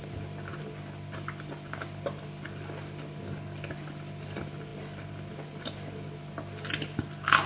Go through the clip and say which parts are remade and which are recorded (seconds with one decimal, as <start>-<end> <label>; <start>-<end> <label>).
0.0-7.5 recorded